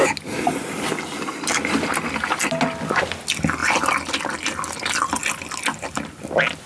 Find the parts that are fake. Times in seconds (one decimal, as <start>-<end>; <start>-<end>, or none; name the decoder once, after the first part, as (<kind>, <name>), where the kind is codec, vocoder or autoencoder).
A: none